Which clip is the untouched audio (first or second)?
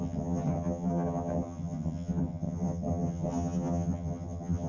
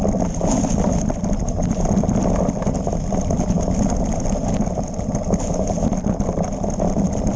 second